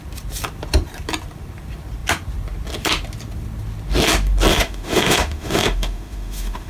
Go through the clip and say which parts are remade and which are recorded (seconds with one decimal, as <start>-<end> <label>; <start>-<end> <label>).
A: 0.0-4.5 recorded; 4.5-6.7 remade